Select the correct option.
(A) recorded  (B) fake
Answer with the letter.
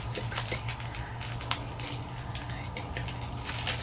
A